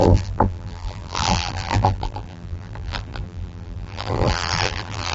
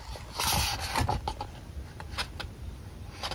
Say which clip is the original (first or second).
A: second